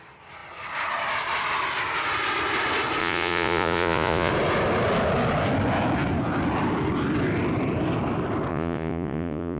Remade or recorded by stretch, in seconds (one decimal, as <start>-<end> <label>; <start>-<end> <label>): 0.0-3.0 recorded; 3.0-4.3 remade; 4.3-8.5 recorded; 8.5-9.6 remade